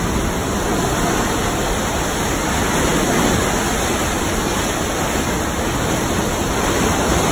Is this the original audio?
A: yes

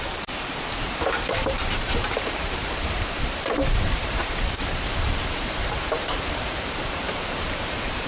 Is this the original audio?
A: no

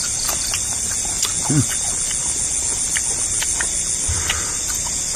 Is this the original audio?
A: yes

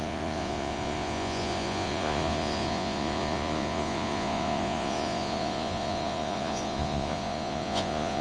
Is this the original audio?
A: no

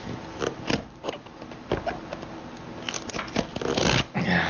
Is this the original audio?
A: yes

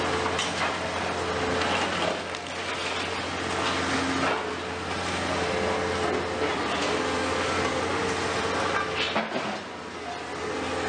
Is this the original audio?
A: yes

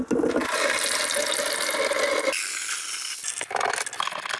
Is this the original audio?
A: yes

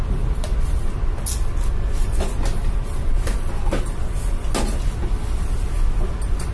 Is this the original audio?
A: yes